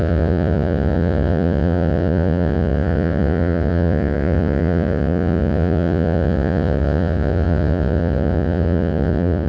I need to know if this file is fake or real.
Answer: fake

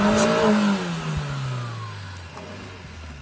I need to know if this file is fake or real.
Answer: real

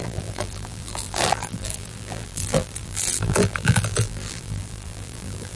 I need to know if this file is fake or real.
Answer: fake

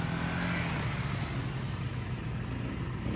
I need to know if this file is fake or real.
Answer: real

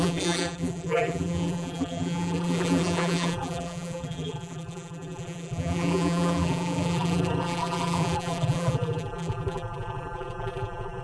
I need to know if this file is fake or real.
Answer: fake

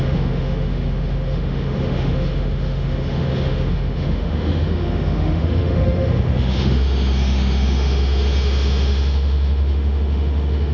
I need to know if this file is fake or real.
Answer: fake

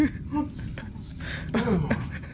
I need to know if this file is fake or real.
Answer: real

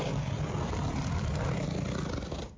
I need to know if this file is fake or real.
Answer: real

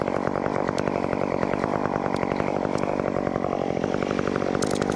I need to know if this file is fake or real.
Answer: real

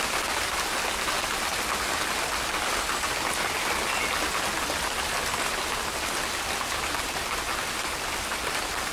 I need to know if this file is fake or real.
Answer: real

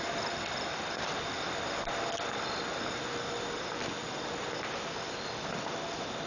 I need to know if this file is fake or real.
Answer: real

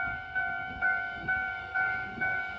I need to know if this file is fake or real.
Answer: fake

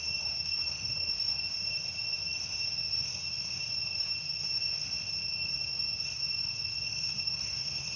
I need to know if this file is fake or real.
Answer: fake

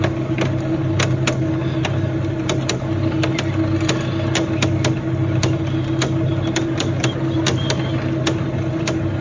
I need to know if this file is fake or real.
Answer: real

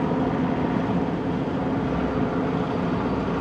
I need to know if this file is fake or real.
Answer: real